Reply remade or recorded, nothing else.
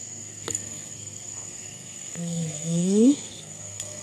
remade